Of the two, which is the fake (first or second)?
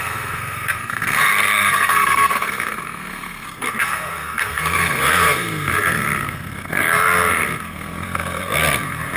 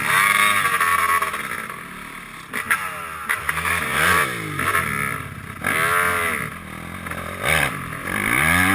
first